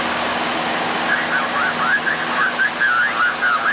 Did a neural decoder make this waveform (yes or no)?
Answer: no